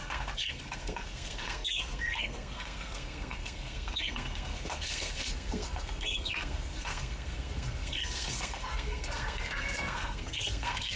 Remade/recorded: remade